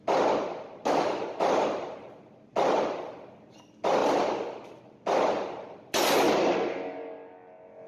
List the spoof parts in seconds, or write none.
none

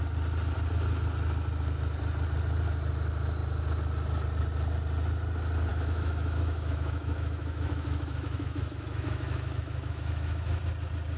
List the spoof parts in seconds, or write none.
5.7-10.6 (autoencoder, DAC-VAE)

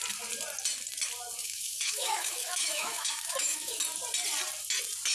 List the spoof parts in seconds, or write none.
1.4-3.8 (autoencoder, DAC-VAE)

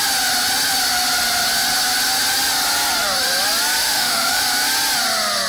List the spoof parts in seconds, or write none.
3.8-4.4 (autoencoder, DAC-VAE)

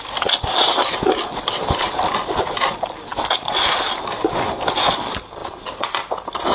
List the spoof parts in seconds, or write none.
none

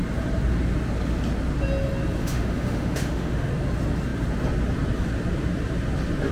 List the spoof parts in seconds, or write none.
2.2-3.5 (autoencoder, DAC-VAE)

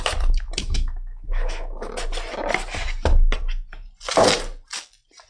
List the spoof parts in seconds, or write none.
0.6-1.9 (autoencoder, DAC-VAE)

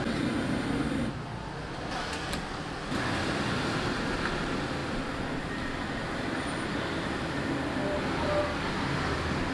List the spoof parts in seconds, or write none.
none